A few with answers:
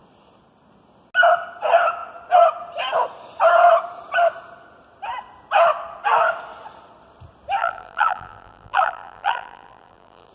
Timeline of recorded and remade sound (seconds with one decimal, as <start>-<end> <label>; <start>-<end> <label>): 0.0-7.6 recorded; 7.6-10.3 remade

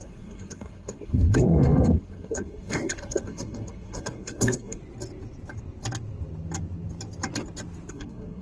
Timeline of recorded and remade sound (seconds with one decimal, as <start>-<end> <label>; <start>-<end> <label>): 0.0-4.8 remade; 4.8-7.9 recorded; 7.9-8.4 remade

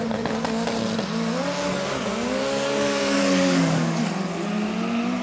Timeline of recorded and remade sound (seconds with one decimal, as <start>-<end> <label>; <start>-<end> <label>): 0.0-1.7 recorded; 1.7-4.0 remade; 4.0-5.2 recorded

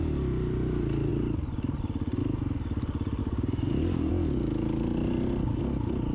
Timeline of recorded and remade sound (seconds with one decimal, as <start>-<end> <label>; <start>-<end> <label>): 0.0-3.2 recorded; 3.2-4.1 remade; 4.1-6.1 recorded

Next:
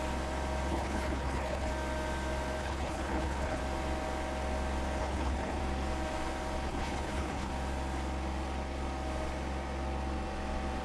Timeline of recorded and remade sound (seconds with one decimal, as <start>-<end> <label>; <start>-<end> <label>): 0.0-0.7 recorded; 0.7-1.7 remade; 1.7-2.6 recorded; 2.6-3.6 remade; 3.6-5.0 recorded; 5.0-5.6 remade; 5.6-6.7 recorded; 6.7-7.5 remade; 7.5-10.8 recorded

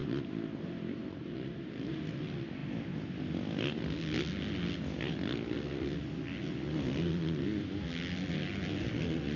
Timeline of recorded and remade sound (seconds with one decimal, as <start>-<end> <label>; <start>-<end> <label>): 0.0-2.0 remade; 2.0-9.4 recorded